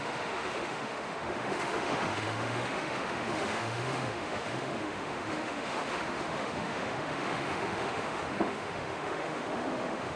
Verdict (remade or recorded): remade